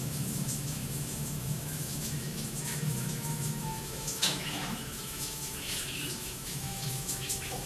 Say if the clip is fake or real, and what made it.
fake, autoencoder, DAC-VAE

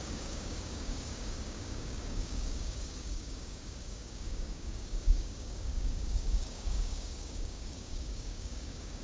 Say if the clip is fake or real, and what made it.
fake, codec, DAC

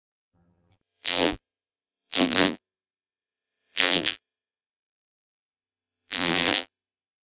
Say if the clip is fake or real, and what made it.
fake, vocoder, BigVGAN v2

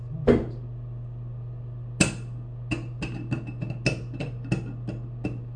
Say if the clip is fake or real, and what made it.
real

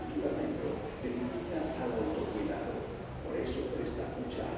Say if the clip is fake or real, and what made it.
real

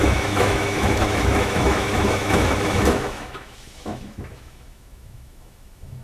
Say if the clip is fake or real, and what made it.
fake, autoencoder, DAC-VAE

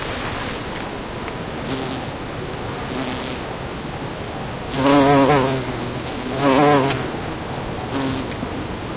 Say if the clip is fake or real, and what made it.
real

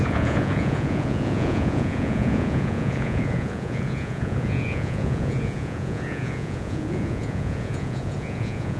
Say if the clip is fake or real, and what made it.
fake, vocoder, Vocos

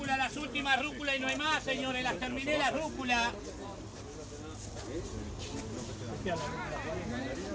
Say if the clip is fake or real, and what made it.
real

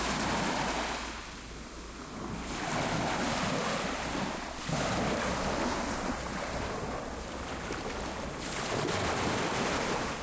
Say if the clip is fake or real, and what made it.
real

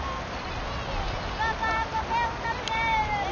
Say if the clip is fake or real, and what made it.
real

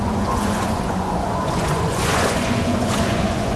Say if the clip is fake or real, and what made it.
fake, vocoder, Vocos